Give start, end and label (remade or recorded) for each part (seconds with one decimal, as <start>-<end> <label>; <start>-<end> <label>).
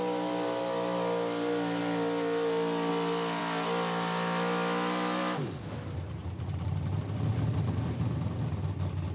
0.0-6.2 recorded; 6.2-7.0 remade; 7.0-9.1 recorded